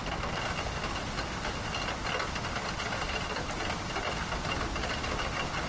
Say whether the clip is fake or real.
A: real